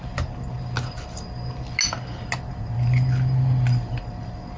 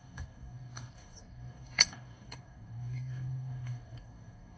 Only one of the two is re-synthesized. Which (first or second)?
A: second